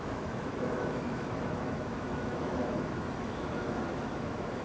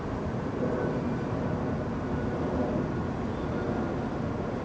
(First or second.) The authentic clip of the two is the second